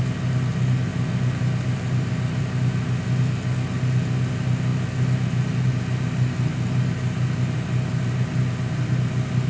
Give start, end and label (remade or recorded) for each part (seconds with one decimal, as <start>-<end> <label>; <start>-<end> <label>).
0.0-9.5 recorded